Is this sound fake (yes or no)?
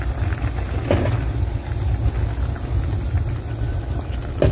no